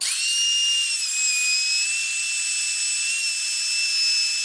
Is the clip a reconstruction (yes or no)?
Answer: no